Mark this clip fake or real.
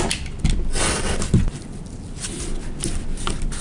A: real